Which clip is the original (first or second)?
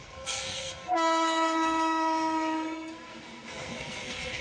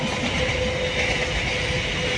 second